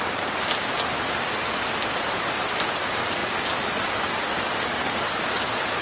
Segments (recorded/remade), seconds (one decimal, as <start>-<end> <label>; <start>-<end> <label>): 0.0-5.8 recorded